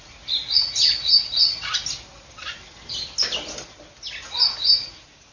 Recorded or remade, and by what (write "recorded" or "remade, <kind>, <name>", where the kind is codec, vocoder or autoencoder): recorded